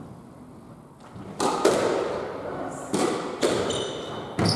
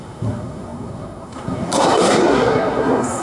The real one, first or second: first